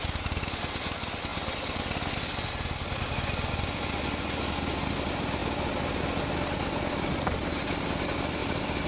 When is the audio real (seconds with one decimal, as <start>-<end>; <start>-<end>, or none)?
0.0-8.4